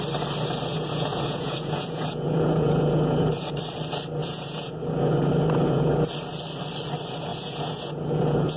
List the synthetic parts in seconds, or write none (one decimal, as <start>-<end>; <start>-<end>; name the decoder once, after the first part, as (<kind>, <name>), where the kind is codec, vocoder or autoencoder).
0.7-3.3 (vocoder, Vocos); 4.2-6.1; 7.3-8.6